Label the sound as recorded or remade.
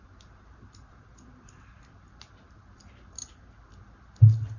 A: recorded